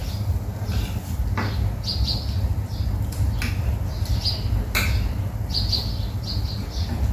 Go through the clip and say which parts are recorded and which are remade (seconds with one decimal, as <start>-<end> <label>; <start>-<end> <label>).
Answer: 0.0-7.1 recorded